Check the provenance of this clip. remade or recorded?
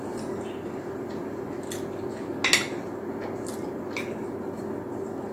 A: recorded